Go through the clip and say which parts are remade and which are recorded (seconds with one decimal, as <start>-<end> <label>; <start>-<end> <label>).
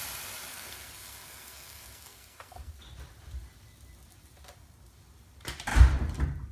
0.0-0.5 recorded; 0.5-2.7 remade; 2.7-6.5 recorded